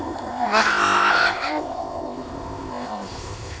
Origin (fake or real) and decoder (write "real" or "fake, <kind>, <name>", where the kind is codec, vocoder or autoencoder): fake, codec, ZipCodec